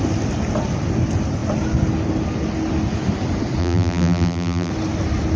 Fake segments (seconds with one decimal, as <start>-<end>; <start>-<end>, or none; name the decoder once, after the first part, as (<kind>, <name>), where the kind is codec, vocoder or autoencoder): 3.6-4.7 (vocoder, BigVGAN v2)